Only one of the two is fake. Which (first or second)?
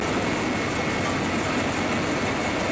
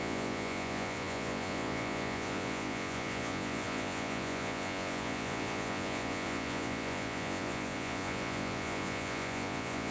second